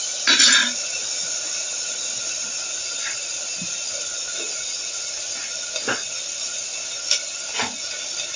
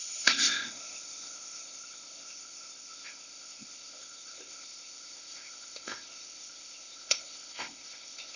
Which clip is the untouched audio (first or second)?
first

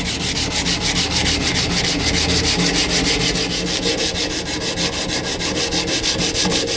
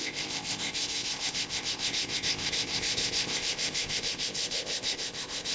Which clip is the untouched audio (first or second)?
first